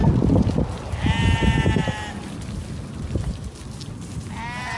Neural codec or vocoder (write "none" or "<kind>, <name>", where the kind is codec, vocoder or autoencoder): none